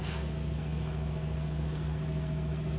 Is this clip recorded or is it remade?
remade